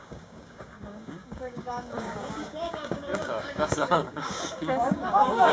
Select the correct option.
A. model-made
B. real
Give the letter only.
A